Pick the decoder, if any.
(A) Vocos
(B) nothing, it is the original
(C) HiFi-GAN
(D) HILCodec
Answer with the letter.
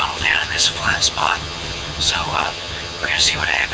C